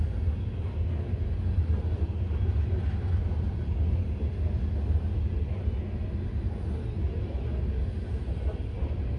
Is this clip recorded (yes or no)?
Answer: yes